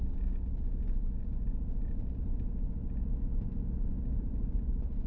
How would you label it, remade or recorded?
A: recorded